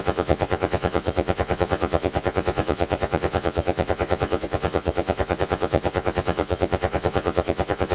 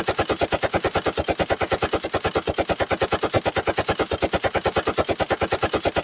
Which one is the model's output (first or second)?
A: first